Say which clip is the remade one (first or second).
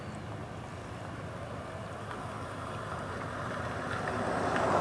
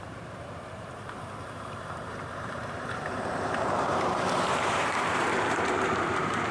second